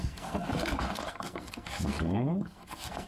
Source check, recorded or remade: remade